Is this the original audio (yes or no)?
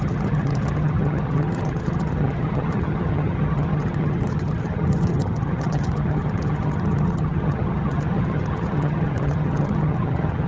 no